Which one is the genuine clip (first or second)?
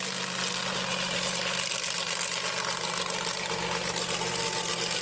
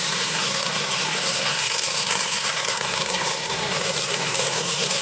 first